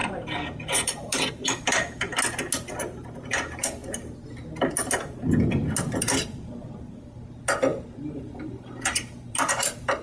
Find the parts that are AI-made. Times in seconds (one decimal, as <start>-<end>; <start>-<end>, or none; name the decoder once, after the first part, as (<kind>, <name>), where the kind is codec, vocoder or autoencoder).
0.0-2.1 (vocoder, BigVGAN v2); 2.7-3.8; 6.0-10.0